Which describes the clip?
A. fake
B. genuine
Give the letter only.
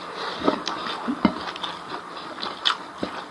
B